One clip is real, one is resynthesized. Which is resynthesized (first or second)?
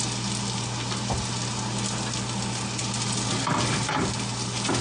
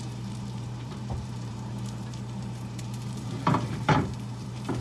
second